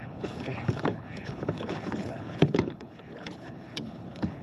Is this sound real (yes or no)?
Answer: no